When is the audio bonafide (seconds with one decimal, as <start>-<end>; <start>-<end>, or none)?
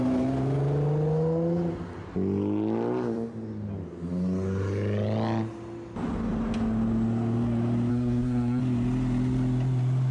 0.0-7.9; 8.6-10.1